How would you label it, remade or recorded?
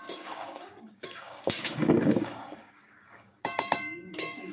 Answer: remade